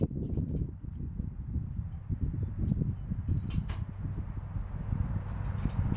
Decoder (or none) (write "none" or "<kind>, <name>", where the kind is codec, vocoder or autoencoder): none